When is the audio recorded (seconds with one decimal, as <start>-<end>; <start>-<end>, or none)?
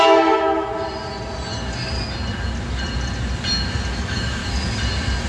0.7-3.9; 4.4-5.3